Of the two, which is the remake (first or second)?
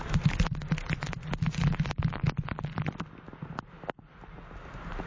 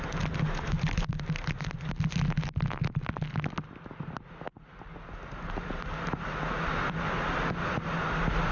first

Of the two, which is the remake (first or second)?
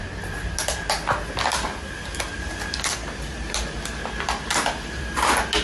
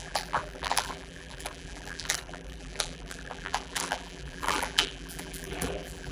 second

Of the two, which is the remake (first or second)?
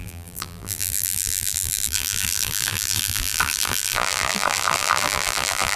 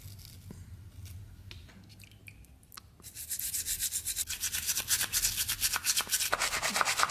first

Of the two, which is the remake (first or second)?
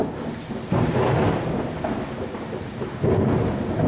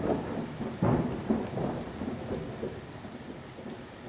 second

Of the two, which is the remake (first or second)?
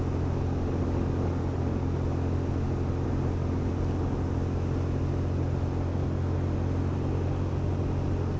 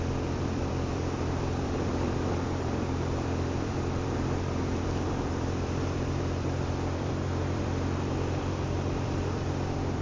second